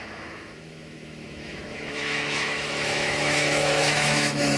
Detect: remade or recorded remade